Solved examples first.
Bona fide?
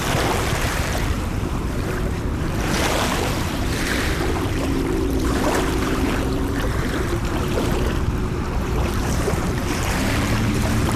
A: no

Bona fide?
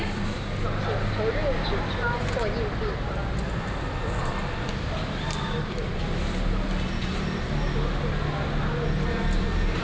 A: yes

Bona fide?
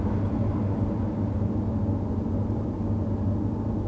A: yes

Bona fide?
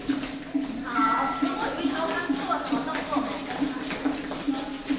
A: yes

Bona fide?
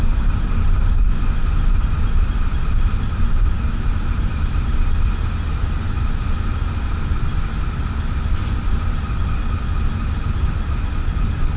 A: yes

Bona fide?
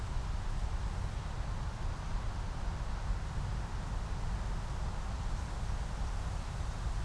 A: yes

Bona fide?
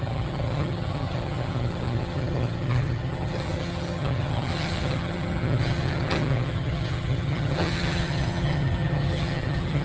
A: no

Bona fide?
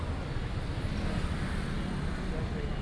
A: yes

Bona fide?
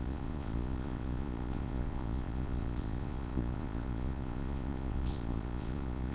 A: no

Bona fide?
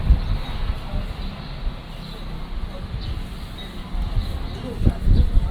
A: yes